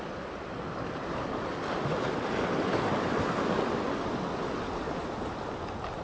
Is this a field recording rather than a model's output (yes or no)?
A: yes